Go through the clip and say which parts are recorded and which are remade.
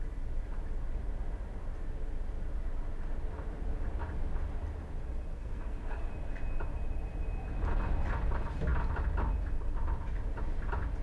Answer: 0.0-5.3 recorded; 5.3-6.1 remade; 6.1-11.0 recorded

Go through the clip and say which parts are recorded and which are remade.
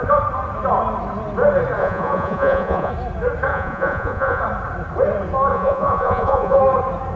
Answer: 0.0-1.8 recorded; 1.8-2.9 remade; 2.9-3.5 recorded; 3.5-4.4 remade; 4.4-5.5 recorded; 5.5-6.6 remade; 6.6-7.2 recorded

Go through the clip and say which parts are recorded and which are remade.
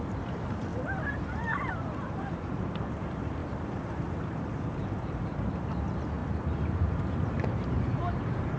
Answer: 0.0-8.6 remade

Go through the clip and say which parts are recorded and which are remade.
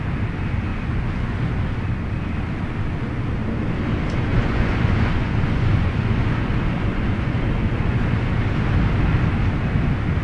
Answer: 0.0-0.7 recorded; 0.7-1.5 remade; 1.5-4.3 recorded; 4.3-8.3 remade; 8.3-10.2 recorded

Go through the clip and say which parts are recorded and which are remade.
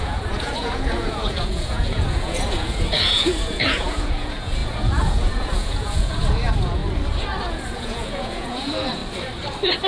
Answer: 0.0-6.8 remade; 6.8-7.5 recorded; 7.5-9.0 remade; 9.0-9.9 recorded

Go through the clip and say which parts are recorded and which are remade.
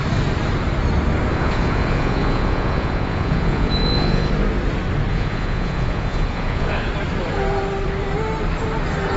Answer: 0.0-1.3 recorded; 1.3-4.3 remade; 4.3-5.1 recorded; 5.1-6.9 remade; 6.9-9.2 recorded